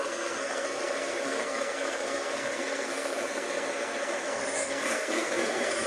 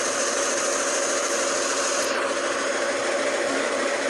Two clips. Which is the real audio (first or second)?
second